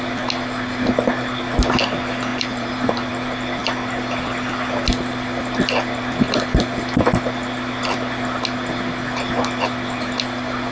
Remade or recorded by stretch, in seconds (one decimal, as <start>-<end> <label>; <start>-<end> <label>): 0.0-2.3 recorded; 2.3-3.1 remade; 3.1-10.7 recorded